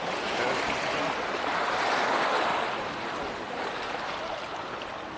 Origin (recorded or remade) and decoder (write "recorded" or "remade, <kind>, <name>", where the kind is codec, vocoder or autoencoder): recorded